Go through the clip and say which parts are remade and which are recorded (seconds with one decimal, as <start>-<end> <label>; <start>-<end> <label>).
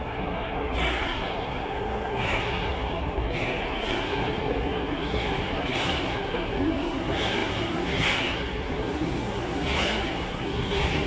0.0-11.1 remade